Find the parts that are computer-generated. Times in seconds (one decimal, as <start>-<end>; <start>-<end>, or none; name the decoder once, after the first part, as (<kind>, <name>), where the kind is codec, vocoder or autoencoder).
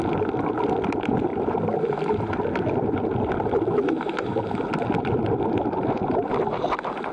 none